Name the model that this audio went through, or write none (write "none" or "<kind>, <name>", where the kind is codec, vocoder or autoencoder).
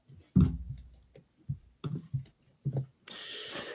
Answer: none